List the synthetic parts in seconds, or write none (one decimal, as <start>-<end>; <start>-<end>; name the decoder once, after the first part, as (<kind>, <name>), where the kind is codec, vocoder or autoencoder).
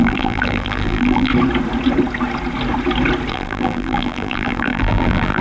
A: 0.0-1.3 (vocoder, BigVGAN v2); 3.3-5.4